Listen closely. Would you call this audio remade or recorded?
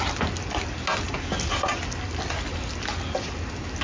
recorded